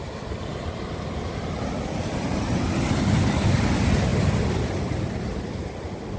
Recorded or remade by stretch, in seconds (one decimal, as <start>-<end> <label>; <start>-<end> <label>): 0.0-6.2 recorded